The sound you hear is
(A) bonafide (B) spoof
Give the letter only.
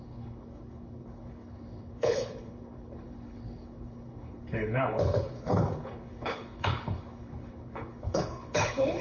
B